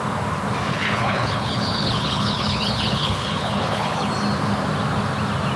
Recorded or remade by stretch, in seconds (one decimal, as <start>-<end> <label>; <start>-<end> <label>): 0.0-0.7 recorded; 0.7-4.1 remade; 4.1-5.6 recorded